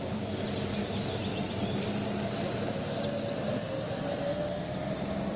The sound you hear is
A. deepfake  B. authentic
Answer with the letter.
B